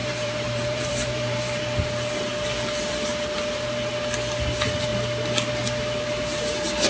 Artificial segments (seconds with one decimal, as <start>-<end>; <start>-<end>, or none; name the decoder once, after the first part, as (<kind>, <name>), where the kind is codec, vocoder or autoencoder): 0.0-1.6 (vocoder, BigVGAN v2)